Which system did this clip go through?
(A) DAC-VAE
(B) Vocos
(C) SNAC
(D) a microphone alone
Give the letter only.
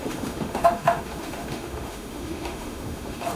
A